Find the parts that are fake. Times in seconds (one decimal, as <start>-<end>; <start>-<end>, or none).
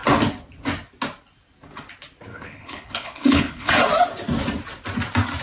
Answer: 2.3-3.7